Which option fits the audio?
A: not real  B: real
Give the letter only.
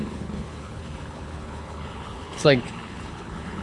A